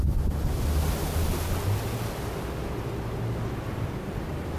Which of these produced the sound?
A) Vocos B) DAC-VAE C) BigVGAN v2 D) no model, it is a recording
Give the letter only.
D